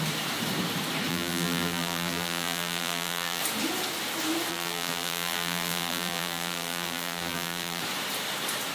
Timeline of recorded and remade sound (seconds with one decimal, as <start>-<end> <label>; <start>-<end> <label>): 0.0-1.1 recorded; 1.1-3.4 remade; 3.4-4.5 recorded; 4.5-7.8 remade; 7.8-8.7 recorded